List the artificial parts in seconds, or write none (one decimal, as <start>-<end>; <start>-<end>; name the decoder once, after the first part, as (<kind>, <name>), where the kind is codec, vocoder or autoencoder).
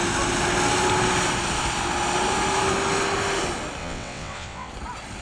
3.8-4.7 (vocoder, WaveNeXt)